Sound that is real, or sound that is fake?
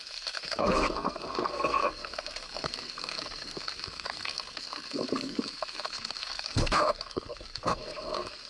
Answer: fake